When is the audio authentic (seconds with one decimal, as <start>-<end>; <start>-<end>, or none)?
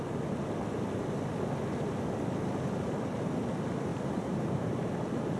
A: 0.0-5.4